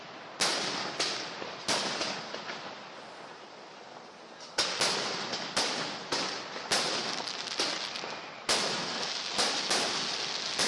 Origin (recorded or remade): recorded